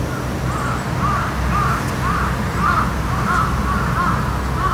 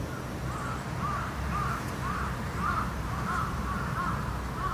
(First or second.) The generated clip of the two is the second